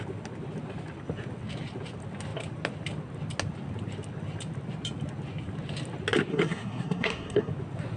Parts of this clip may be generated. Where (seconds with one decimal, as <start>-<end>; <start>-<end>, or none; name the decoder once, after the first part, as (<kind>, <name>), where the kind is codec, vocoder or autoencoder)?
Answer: 6.3-7.5 (codec, SNAC)